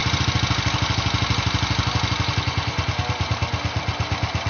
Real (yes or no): yes